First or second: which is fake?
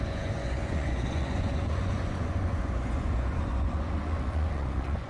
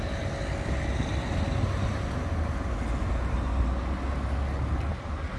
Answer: first